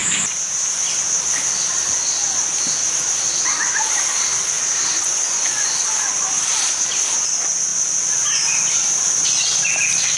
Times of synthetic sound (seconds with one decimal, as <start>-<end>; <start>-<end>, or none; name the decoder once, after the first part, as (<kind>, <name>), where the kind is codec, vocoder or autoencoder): 4.9-5.8 (vocoder, Vocos)